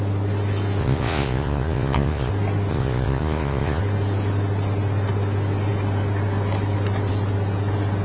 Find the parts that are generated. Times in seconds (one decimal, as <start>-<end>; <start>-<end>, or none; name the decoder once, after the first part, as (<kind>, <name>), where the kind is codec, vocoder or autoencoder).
0.8-2.3 (vocoder, Vocos); 2.7-3.8